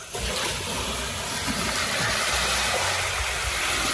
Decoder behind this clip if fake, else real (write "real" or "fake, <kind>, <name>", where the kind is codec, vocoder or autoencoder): real